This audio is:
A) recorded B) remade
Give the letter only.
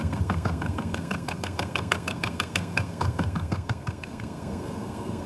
B